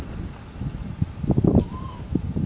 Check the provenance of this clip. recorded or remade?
recorded